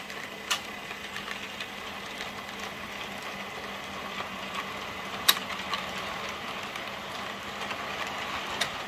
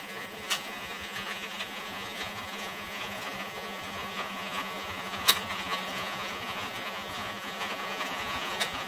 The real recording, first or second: first